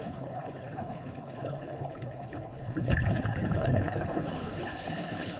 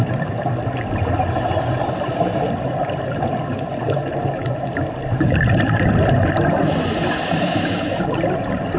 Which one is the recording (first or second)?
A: second